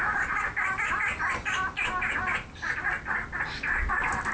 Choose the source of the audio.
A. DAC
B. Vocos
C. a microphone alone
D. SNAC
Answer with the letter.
C